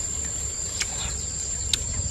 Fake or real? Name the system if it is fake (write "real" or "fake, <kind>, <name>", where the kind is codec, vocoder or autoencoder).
fake, vocoder, BigVGAN v2